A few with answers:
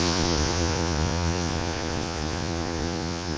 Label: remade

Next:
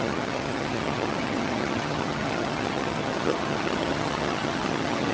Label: remade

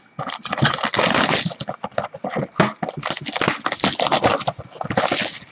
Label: recorded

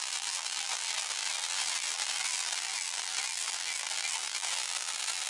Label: remade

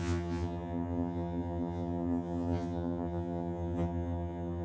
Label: remade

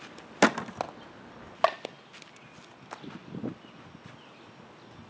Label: recorded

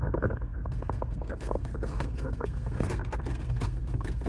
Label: remade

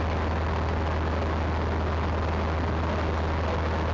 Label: recorded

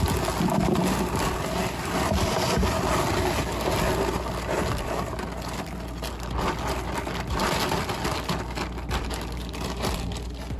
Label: recorded